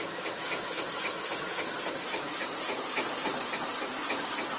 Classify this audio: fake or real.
real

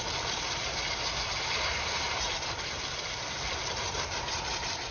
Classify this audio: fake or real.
real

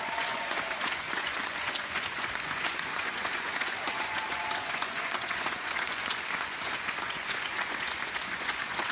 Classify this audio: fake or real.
fake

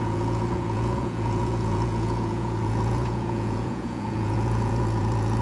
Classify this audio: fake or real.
fake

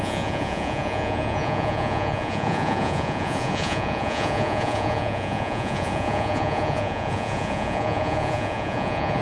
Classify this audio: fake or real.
fake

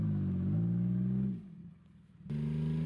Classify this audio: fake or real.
real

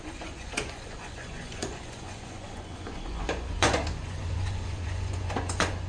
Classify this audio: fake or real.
fake